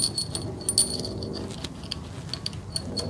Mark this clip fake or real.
real